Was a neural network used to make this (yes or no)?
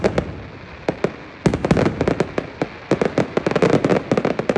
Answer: no